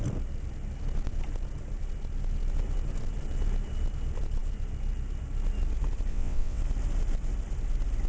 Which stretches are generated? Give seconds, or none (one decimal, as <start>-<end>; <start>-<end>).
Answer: 6.1-6.6